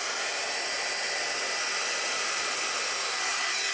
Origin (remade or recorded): recorded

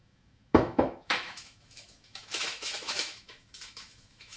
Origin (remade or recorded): remade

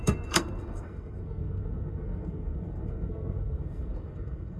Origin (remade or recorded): remade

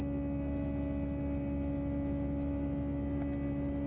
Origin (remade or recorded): recorded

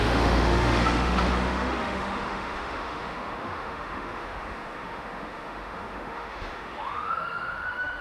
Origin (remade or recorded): remade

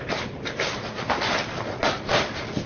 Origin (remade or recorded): recorded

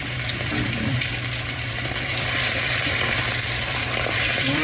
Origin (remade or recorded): remade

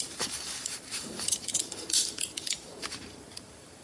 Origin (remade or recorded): remade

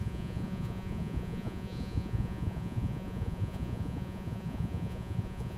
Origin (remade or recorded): remade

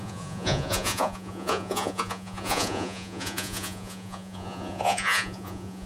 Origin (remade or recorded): remade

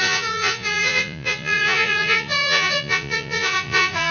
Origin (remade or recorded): remade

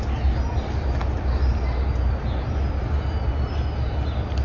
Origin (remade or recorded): recorded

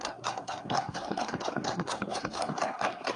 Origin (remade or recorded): remade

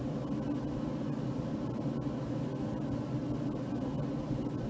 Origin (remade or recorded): recorded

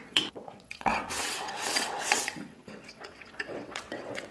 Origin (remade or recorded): remade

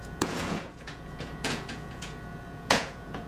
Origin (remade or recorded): remade